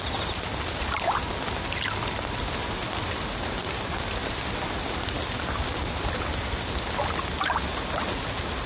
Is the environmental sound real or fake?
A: real